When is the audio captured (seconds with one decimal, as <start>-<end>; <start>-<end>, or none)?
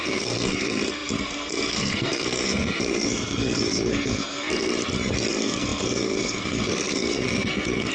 4.7-5.3